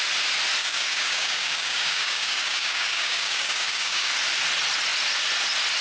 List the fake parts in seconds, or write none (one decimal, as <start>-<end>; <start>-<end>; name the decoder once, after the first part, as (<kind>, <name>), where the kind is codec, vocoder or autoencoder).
0.6-4.1 (codec, DAC)